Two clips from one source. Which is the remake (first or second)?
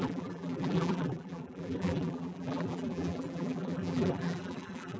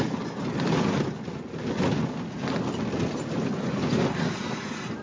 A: first